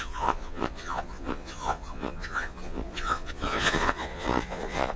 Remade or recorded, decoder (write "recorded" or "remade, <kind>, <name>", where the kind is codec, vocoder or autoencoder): remade, vocoder, Vocos